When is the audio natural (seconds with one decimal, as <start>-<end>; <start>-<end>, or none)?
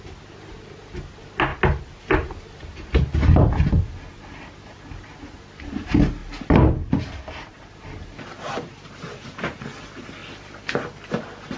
0.0-10.2; 11.1-11.6